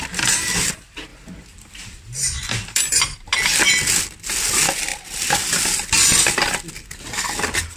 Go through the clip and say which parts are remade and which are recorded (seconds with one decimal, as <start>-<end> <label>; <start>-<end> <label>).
0.0-1.1 recorded; 1.1-2.8 remade; 2.8-7.8 recorded